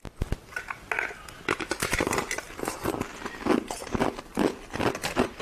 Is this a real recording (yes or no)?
yes